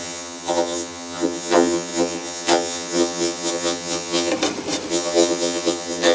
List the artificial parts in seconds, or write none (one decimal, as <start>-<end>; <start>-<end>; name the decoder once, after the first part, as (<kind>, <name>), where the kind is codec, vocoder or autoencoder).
0.0-4.3 (vocoder, HiFi-GAN); 4.9-6.1